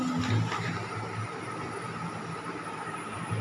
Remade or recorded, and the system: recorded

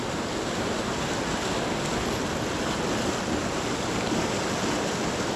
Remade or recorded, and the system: recorded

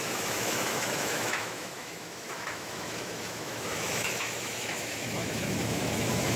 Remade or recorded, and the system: remade, autoencoder, DAC-VAE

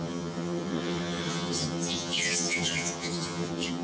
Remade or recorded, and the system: remade, vocoder, HiFi-GAN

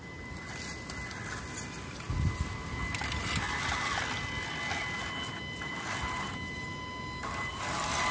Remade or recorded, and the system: recorded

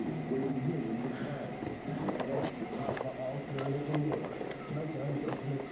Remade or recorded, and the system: recorded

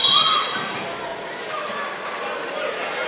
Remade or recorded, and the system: recorded